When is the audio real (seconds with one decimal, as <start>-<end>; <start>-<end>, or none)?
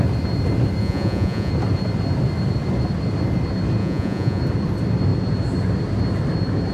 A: 0.0-0.8; 1.5-3.8; 4.4-6.7